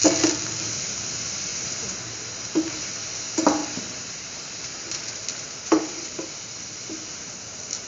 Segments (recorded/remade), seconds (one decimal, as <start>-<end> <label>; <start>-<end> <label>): 0.0-1.5 recorded; 1.5-2.9 remade; 2.9-3.6 recorded; 3.6-6.1 remade; 6.1-7.9 recorded